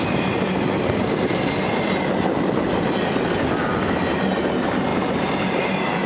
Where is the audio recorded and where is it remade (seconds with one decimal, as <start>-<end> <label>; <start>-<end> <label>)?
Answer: 0.0-6.1 recorded